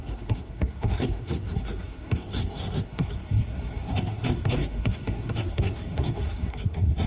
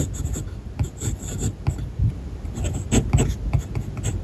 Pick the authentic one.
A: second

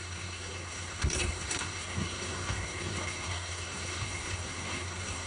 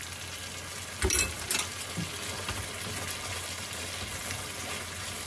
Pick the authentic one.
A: second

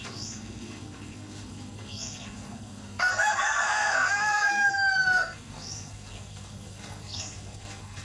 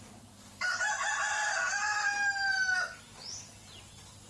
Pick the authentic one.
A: second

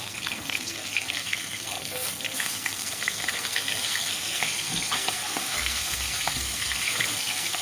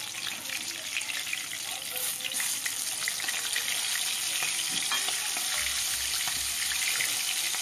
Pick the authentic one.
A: second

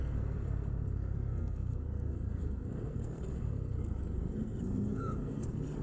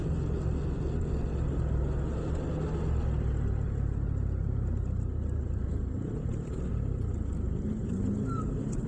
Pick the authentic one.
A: second